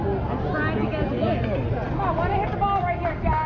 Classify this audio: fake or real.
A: real